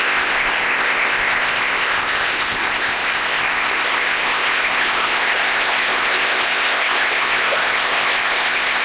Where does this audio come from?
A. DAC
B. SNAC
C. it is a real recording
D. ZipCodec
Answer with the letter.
D